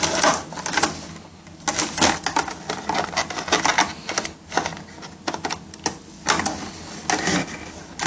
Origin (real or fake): real